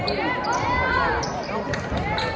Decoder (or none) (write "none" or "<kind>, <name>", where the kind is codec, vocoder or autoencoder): none